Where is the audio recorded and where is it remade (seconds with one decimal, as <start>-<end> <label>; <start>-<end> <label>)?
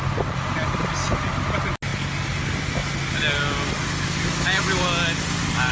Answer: 0.0-5.7 recorded